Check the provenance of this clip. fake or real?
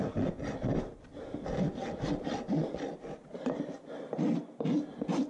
real